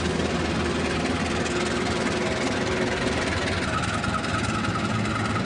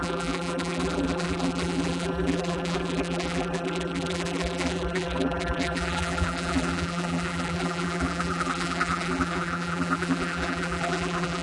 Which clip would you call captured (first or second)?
first